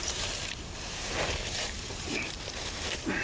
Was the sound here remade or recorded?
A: remade